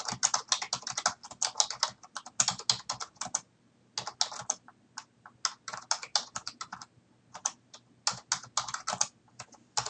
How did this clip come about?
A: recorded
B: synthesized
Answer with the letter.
A